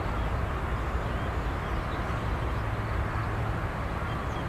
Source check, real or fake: real